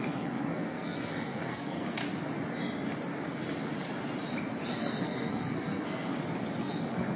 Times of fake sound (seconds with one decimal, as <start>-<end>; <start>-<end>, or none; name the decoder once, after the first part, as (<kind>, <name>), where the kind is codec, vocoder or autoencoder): 0.0-2.0 (codec, SNAC); 4.8-6.1; 6.6-7.2